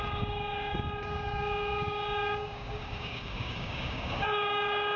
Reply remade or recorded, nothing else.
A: remade